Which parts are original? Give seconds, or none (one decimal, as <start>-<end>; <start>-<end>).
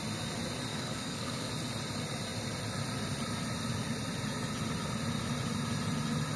0.0-0.7; 1.5-6.4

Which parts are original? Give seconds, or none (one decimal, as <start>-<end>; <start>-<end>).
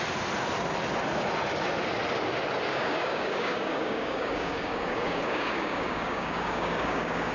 0.0-2.7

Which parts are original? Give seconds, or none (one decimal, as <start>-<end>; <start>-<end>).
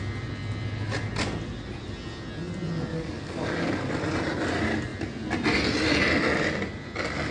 0.0-2.9; 3.9-7.3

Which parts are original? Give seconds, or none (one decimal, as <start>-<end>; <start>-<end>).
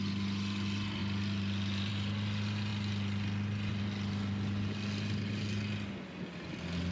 0.0-6.9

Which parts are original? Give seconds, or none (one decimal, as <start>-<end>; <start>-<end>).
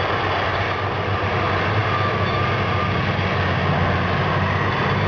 0.0-5.1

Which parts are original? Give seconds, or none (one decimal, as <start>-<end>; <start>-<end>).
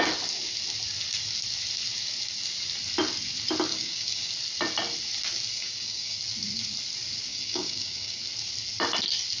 0.0-3.7; 4.3-5.5; 6.2-7.3; 8.2-9.4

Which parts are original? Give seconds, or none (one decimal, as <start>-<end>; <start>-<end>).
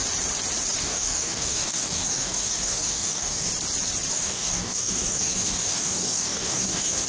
0.0-0.8; 3.5-4.1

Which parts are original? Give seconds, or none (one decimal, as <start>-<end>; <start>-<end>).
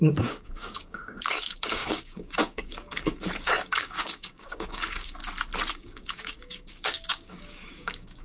5.2-5.7